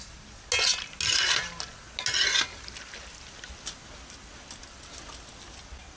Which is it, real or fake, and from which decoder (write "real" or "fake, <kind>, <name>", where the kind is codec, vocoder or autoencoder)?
real